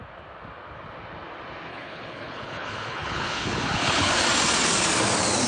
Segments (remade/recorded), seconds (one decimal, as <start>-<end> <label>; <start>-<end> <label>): 0.0-1.7 recorded; 1.7-4.1 remade; 4.1-5.5 recorded